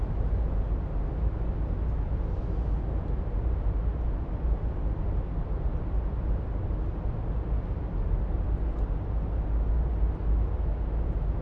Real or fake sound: real